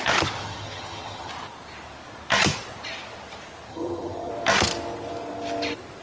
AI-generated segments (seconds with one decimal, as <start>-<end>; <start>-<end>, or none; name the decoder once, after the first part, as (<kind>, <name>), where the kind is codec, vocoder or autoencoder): 0.4-1.3 (vocoder, HiFi-GAN); 3.7-4.3